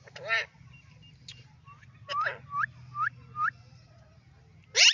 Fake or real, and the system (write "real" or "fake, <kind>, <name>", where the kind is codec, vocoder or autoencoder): real